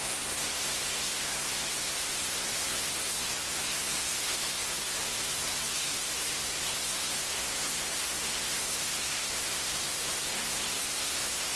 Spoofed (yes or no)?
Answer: yes